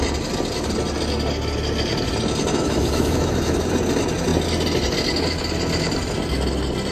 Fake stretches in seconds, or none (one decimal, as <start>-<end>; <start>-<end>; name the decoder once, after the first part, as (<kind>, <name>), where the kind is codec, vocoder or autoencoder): 2.5-3.7 (autoencoder, DAC-VAE)

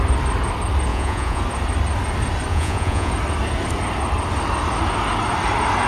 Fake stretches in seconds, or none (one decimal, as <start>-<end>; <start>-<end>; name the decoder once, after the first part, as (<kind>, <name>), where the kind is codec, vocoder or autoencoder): 0.9-1.4 (vocoder, Vocos); 2.5-3.1

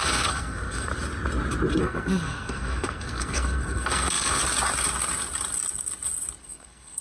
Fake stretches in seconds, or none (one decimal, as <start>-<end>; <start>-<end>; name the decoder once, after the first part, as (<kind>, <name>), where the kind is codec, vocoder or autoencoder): 0.0-0.9 (codec, SNAC); 1.8-4.4; 6.4-7.0

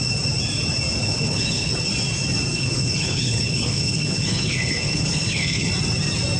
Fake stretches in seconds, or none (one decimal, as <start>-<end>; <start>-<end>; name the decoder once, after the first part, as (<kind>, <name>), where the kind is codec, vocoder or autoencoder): 1.0-1.7 (codec, HILCodec); 2.5-5.7

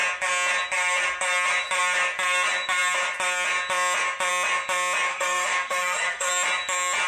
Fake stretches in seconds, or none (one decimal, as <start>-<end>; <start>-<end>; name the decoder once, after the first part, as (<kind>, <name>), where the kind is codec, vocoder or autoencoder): 5.1-6.3 (codec, SNAC)

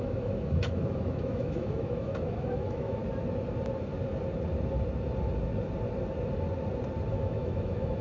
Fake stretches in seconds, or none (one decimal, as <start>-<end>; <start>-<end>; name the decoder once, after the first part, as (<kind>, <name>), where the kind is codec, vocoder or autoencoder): 0.0-3.0 (autoencoder, DAC-VAE); 7.1-8.0

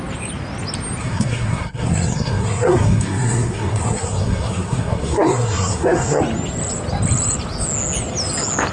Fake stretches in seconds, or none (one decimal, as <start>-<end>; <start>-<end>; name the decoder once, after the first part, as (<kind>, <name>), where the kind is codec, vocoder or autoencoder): 1.0-6.2 (codec, SNAC)